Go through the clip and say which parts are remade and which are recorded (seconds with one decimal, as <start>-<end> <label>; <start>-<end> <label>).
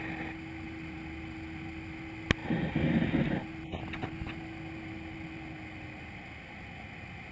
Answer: 0.0-7.3 recorded